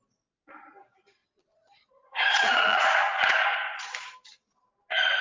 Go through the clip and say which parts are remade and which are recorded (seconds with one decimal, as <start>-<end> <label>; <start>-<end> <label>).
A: 0.0-1.2 recorded; 1.2-3.3 remade; 3.3-5.2 recorded

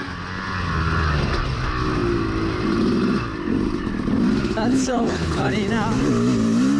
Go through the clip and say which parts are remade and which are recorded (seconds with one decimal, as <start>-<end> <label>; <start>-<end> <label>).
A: 0.0-4.7 recorded; 4.7-5.5 remade; 5.5-6.8 recorded

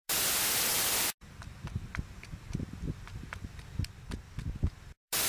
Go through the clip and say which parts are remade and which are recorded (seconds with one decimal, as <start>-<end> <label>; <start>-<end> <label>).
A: 0.0-5.3 recorded

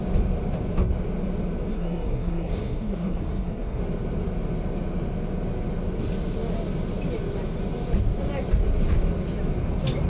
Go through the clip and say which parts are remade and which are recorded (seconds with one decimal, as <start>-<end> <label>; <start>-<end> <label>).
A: 0.0-1.7 recorded; 1.7-3.8 remade; 3.8-10.1 recorded

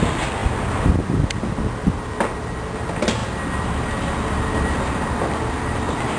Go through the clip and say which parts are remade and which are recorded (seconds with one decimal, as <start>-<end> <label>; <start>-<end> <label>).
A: 0.0-0.4 recorded; 0.4-1.5 remade; 1.5-6.2 recorded

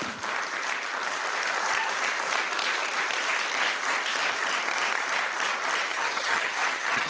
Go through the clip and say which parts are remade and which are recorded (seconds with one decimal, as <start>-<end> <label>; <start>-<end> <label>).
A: 0.0-5.9 recorded; 5.9-7.1 remade